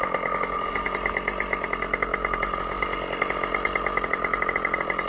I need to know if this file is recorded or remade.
recorded